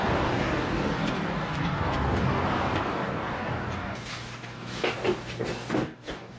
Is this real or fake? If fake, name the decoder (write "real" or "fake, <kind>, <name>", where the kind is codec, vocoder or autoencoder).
fake, codec, DAC